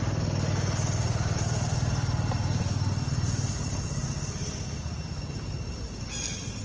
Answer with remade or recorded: recorded